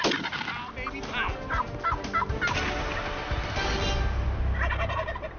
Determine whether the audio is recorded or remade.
recorded